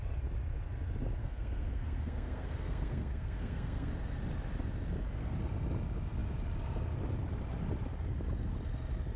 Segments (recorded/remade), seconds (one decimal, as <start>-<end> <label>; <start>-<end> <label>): 0.0-1.2 recorded; 1.2-3.9 remade; 3.9-9.2 recorded